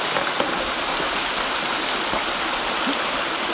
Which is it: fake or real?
real